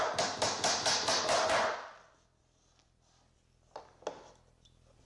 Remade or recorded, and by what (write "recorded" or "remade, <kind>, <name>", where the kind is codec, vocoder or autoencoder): recorded